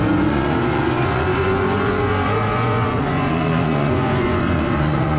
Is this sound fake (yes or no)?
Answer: yes